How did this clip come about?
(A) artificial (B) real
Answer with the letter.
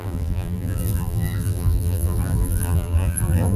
A